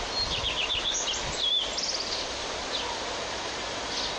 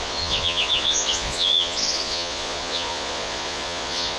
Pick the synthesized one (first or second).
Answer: second